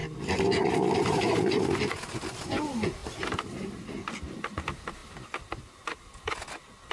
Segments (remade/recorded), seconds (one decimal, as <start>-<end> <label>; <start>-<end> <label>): 0.0-3.0 recorded; 3.0-3.7 remade; 3.7-6.9 recorded